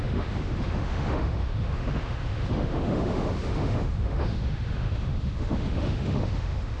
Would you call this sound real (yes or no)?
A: no